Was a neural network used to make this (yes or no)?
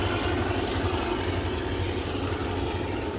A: no